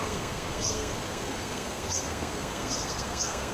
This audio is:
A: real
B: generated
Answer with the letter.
B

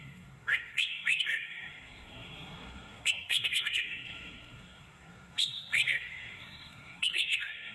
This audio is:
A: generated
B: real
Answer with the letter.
A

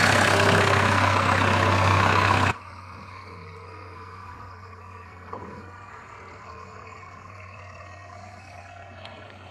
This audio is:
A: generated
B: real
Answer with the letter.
A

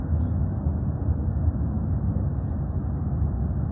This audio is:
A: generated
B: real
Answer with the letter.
B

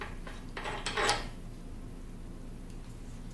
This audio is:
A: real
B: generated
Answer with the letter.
A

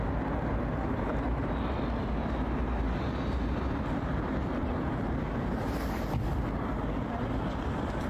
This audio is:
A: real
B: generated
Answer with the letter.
A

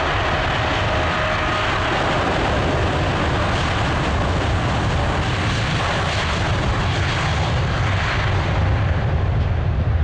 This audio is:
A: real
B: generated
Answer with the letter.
A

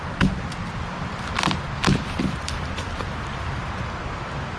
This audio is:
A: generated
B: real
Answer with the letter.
B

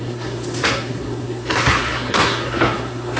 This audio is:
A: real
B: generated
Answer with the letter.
B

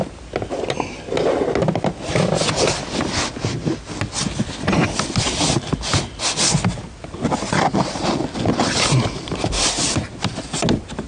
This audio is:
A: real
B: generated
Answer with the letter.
A